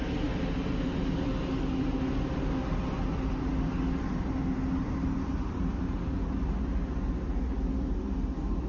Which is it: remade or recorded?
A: recorded